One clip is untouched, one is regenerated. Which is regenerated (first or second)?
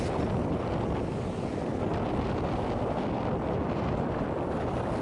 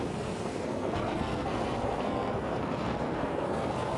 second